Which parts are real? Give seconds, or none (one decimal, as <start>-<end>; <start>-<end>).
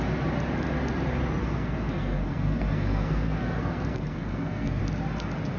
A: 0.0-1.4; 4.8-5.6